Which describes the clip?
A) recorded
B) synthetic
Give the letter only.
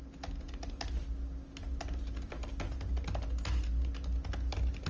A